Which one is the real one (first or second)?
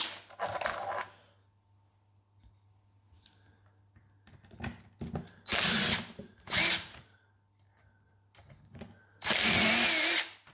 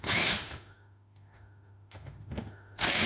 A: first